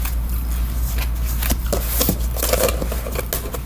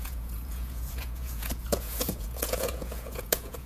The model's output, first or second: second